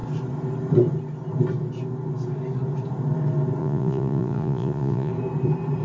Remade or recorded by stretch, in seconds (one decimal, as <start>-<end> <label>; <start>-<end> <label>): 0.0-3.6 recorded; 3.6-5.1 remade; 5.1-5.8 recorded